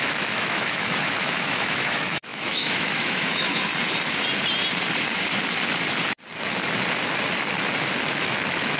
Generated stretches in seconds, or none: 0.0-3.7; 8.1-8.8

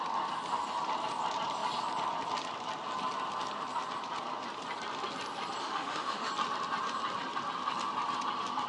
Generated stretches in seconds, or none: 5.6-6.3

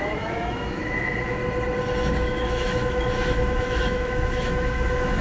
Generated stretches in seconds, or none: 0.0-1.4; 2.0-5.2

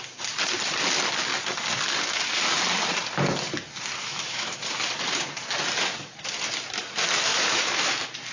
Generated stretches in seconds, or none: 4.0-4.6; 7.3-7.9

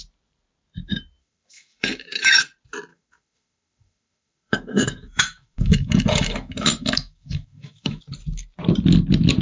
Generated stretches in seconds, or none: 1.2-2.4; 2.9-8.0

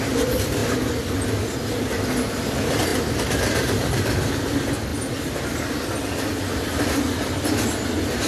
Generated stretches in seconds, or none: none

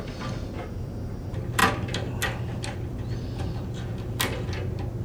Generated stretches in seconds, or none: none

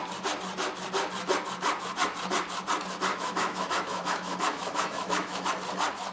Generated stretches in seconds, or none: 3.1-5.5